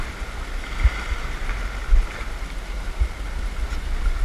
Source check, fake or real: real